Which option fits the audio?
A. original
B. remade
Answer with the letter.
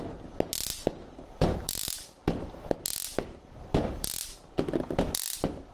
A